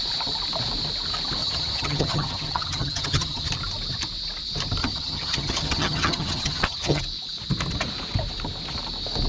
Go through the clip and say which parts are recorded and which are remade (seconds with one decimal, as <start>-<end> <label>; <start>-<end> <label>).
0.0-1.4 recorded; 1.4-3.5 remade; 3.5-4.8 recorded; 4.8-7.0 remade; 7.0-9.3 recorded